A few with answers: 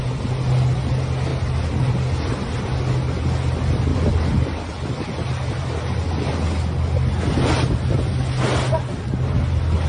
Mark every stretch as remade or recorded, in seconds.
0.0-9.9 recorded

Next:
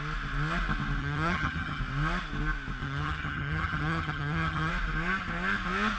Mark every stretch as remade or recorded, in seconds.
0.0-1.0 recorded; 1.0-1.8 remade; 1.8-2.8 recorded; 2.8-4.7 remade; 4.7-6.0 recorded

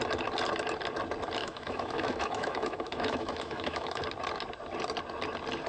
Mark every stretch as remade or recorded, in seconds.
0.0-1.4 recorded; 1.4-4.0 remade; 4.0-5.7 recorded

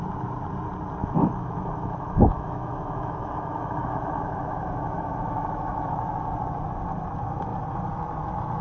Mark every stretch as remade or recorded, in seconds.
0.0-1.0 recorded; 1.0-6.1 remade; 6.1-8.6 recorded

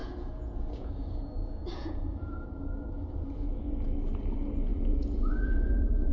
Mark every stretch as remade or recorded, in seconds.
0.0-3.7 remade; 3.7-4.7 recorded; 4.7-6.1 remade

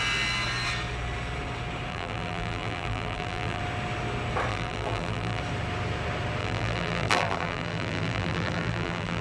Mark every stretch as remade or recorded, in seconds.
0.0-1.9 recorded; 1.9-3.6 remade; 3.6-4.5 recorded; 4.5-5.4 remade; 5.4-6.4 recorded; 6.4-9.2 remade

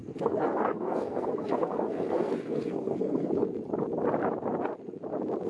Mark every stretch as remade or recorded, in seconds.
0.0-3.3 remade; 3.3-5.5 recorded

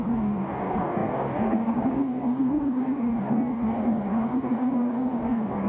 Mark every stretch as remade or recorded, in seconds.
0.0-5.7 remade